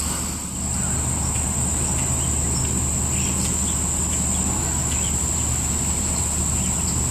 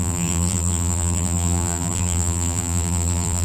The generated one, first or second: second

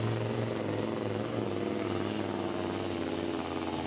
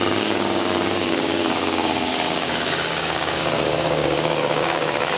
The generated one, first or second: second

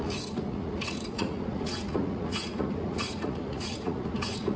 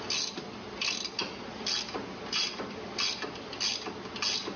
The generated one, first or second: first